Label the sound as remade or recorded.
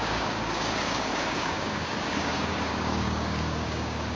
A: remade